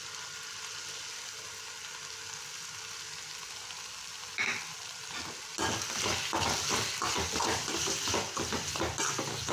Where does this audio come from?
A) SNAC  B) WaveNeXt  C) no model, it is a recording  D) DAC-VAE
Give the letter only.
C